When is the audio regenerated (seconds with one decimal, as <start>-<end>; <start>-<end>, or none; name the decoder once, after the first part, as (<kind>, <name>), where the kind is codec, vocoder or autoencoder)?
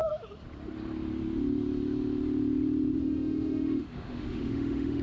3.0-5.0 (autoencoder, DAC-VAE)